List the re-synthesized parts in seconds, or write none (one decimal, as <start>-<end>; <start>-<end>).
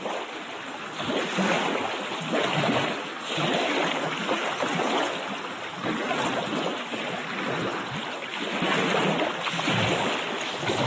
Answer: none